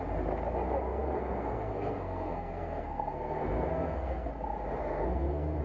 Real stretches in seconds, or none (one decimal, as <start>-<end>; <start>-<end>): 0.0-0.9; 4.3-4.8